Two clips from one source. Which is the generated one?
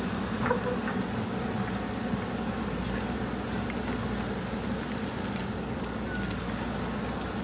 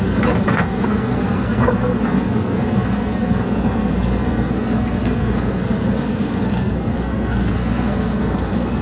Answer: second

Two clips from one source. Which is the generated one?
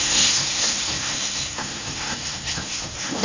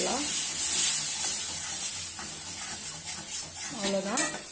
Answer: first